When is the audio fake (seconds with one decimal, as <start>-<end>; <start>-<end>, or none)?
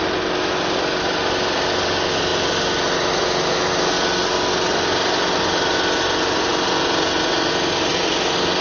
none